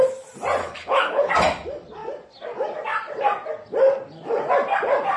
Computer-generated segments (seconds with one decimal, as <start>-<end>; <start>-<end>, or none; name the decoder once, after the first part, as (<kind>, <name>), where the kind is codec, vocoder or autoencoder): 0.6-1.3 (codec, HILCodec)